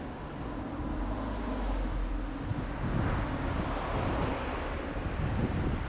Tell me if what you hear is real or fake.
real